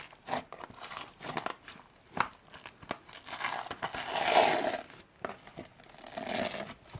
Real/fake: real